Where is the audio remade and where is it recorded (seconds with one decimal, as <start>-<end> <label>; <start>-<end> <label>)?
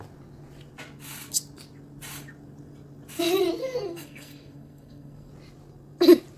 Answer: 0.0-3.6 recorded; 3.6-5.3 remade; 5.3-6.4 recorded